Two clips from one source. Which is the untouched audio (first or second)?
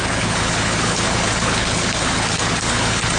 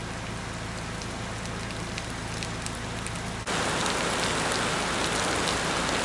second